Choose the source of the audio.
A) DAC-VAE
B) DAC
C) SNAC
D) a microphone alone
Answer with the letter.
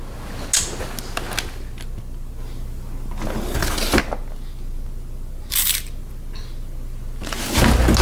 D